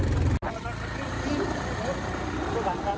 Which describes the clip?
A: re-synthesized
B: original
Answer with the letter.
B